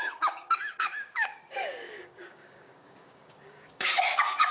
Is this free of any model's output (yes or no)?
no